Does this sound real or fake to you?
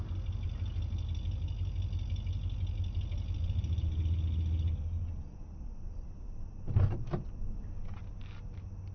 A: real